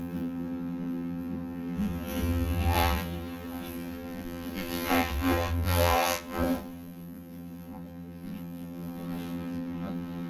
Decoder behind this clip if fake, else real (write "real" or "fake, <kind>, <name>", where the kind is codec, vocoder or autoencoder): fake, vocoder, BigVGAN v2